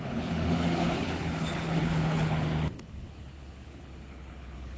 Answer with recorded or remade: remade